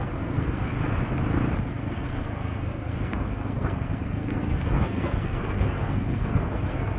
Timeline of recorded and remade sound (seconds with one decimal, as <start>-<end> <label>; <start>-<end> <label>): 0.0-0.7 remade; 0.7-1.7 recorded; 1.7-7.0 remade